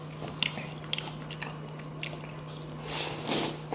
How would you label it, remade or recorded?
recorded